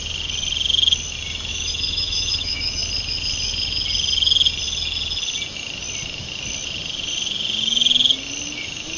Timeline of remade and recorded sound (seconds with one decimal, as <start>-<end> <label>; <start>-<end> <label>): 0.0-1.5 recorded; 1.5-2.8 remade; 2.8-9.0 recorded